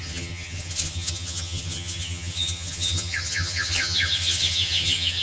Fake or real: fake